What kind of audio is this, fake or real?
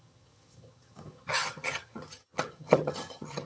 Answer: fake